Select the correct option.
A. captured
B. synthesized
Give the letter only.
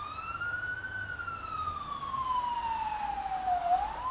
A